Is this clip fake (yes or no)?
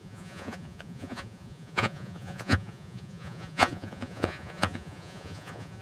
yes